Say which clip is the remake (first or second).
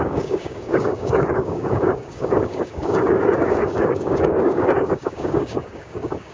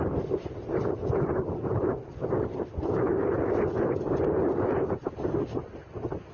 first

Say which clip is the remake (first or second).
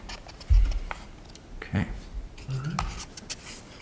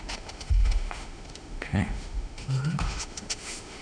second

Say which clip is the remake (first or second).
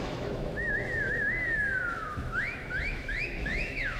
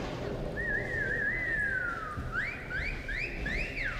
first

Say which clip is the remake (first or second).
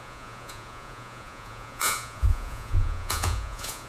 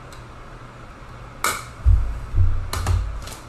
first